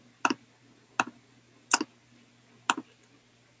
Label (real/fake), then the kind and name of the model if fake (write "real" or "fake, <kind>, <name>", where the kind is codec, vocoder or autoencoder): real